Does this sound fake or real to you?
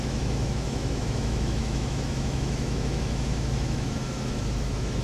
fake